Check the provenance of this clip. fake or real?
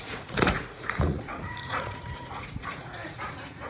fake